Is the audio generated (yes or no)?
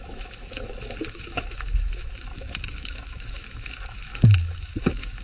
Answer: yes